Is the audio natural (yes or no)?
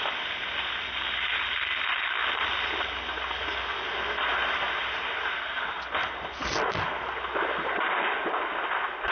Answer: yes